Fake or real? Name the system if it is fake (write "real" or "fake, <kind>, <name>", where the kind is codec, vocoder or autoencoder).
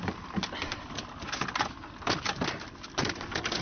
real